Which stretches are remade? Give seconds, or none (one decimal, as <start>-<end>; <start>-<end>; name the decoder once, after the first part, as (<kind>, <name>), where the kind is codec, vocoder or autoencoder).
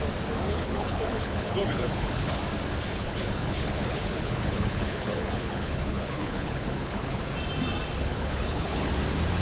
0.5-2.4 (codec, HILCodec); 2.9-7.2; 8.1-8.9